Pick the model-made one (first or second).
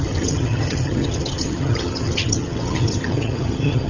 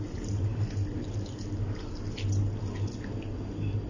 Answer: first